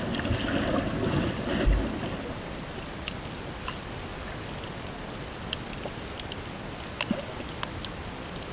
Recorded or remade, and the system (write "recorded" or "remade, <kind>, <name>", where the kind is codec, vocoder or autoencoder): recorded